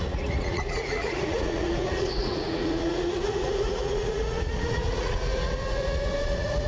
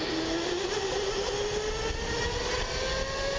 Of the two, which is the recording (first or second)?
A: second